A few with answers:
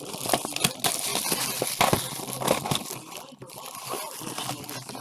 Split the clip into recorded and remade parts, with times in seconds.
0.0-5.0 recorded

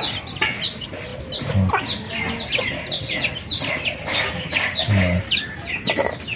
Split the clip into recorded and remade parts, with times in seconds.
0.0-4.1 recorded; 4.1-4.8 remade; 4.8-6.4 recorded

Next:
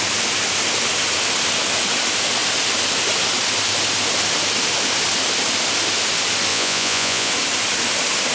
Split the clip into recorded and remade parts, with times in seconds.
0.0-6.5 recorded; 6.5-7.3 remade; 7.3-8.3 recorded

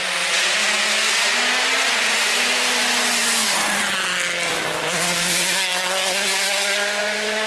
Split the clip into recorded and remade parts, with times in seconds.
0.0-7.5 recorded